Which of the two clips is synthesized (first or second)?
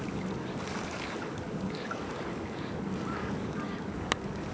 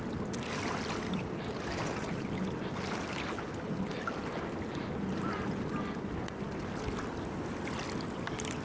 first